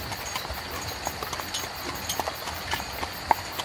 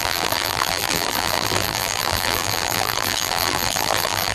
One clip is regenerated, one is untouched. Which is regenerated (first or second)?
second